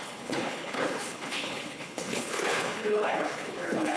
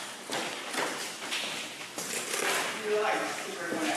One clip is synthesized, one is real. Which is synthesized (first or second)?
first